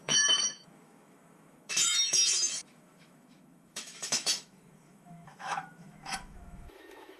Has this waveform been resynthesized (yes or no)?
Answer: yes